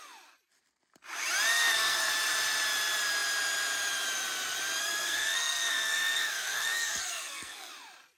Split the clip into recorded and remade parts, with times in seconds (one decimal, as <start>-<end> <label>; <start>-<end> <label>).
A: 0.0-1.5 recorded; 1.5-2.1 remade; 2.1-4.8 recorded; 4.8-7.7 remade; 7.7-8.2 recorded